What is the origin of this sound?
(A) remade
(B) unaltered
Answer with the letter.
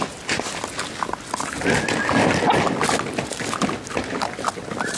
B